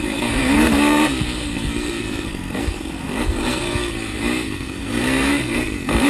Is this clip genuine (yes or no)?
no